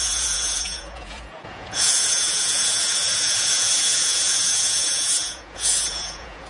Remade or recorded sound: remade